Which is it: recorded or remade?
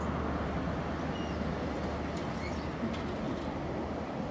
recorded